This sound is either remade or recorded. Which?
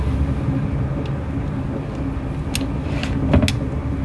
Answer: recorded